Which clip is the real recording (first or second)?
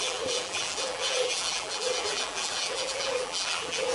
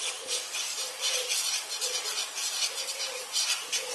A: second